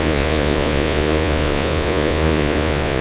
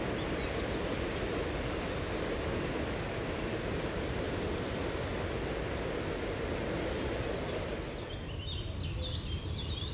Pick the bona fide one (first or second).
second